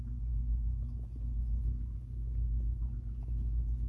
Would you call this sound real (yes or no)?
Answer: yes